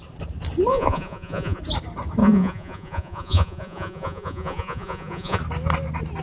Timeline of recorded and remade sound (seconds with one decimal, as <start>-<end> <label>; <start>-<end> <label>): 0.0-0.7 recorded; 0.7-1.6 remade; 1.6-2.2 recorded; 2.2-5.4 remade; 5.4-6.2 recorded